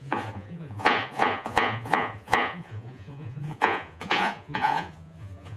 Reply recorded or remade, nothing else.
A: remade